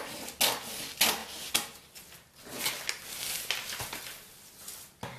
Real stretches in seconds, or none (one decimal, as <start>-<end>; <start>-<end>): 0.0-5.2